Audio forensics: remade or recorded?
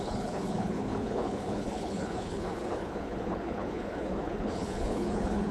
remade